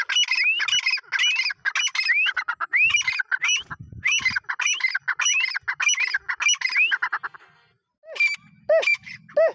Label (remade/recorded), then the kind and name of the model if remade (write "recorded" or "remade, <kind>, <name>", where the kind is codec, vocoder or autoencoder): recorded